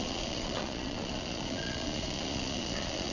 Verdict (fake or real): fake